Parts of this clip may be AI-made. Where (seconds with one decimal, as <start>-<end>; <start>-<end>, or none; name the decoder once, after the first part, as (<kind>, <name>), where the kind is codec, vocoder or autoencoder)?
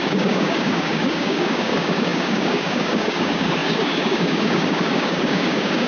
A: 0.0-5.9 (codec, DAC)